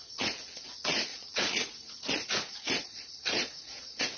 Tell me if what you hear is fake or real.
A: fake